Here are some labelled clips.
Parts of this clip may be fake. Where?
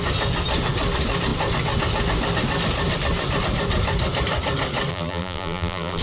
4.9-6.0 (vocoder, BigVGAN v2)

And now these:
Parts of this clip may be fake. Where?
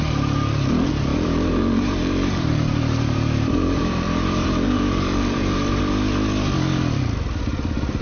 1.1-5.8 (vocoder, BigVGAN v2)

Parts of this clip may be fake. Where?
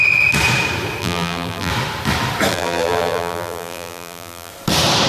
1.0-1.7 (vocoder, BigVGAN v2); 2.5-4.5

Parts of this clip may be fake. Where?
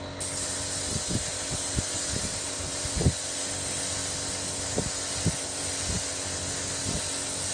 2.3-2.8 (vocoder, BigVGAN v2)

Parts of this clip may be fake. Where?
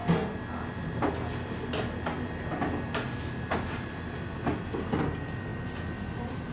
none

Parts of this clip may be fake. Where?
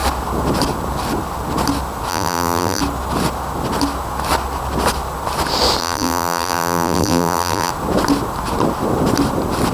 2.1-2.8 (vocoder, BigVGAN v2); 5.8-7.7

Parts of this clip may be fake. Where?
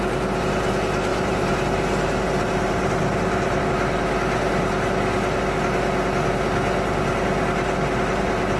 1.1-3.7 (vocoder, BigVGAN v2)